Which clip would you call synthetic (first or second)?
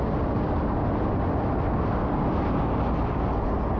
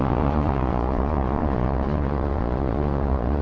second